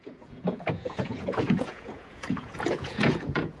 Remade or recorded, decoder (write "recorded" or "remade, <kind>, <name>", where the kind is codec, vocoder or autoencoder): remade, vocoder, Vocos